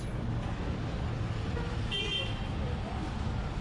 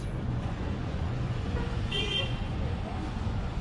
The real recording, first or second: first